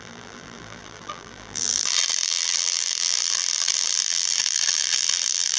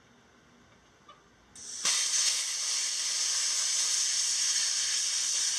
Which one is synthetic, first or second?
first